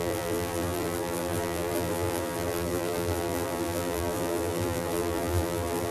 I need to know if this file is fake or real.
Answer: fake